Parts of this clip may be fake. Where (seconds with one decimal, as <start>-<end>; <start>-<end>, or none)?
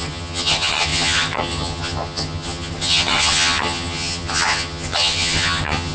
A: 0.0-5.9